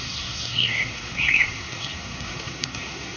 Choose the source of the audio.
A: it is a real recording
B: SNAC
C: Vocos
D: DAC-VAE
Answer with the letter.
B